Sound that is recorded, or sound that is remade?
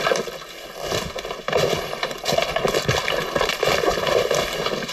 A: recorded